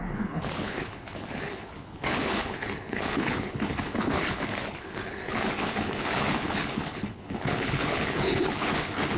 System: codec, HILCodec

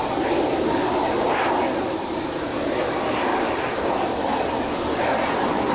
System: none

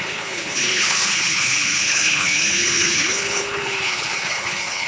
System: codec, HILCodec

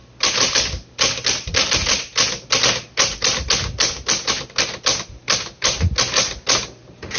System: none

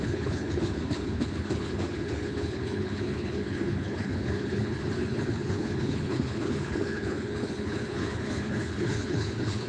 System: codec, HILCodec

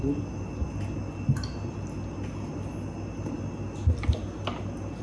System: none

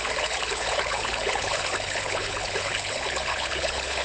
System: codec, HILCodec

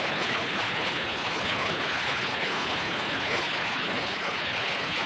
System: codec, HILCodec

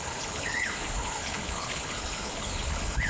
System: codec, HILCodec